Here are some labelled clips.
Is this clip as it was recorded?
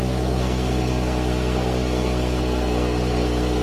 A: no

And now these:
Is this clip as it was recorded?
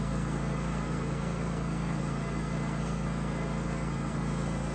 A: no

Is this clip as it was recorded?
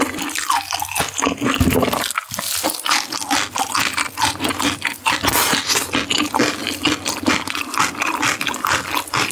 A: yes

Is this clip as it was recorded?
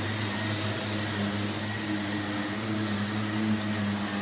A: yes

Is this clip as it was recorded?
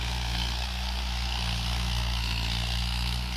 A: no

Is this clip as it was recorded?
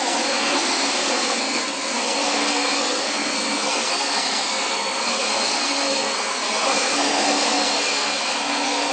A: no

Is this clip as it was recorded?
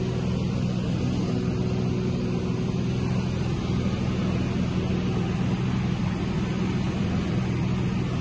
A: yes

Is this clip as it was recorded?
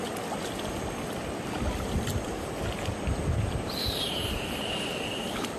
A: yes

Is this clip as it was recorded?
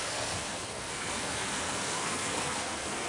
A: no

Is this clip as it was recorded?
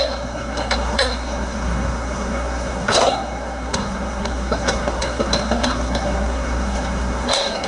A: no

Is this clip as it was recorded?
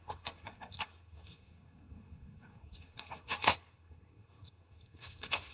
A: no